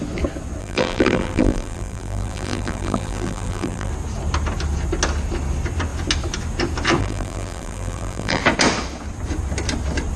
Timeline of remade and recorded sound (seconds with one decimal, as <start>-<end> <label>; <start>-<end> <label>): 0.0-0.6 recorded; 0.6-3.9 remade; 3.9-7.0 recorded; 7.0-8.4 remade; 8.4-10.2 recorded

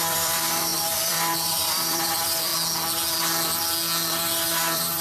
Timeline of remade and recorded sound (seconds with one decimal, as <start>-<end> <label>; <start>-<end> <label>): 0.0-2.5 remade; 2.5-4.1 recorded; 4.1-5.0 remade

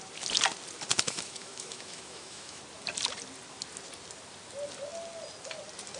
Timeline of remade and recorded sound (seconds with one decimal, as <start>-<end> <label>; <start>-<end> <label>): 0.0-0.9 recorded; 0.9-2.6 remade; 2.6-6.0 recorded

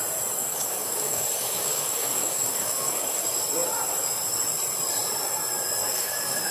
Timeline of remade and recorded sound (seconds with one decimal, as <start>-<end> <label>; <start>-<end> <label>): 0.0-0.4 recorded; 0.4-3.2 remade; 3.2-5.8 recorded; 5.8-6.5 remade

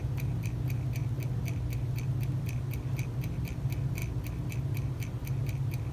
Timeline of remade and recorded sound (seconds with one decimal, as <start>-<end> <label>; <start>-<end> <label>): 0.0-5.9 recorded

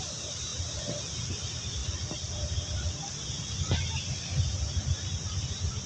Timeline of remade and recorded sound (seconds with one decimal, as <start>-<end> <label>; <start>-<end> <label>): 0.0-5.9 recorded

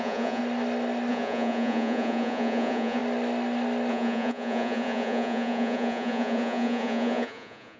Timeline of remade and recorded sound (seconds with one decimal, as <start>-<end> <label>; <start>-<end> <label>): 0.0-0.4 remade; 0.4-1.1 recorded; 1.1-3.0 remade; 3.0-3.9 recorded; 3.9-7.8 remade

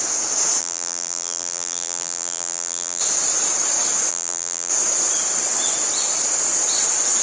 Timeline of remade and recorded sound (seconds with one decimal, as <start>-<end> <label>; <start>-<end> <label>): 0.0-0.6 recorded; 0.6-3.0 remade; 3.0-4.1 recorded; 4.1-4.7 remade; 4.7-7.2 recorded